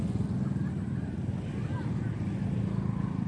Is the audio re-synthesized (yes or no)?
no